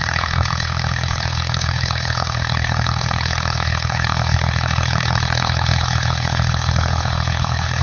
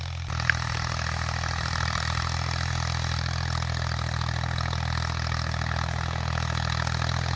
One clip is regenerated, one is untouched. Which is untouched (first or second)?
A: second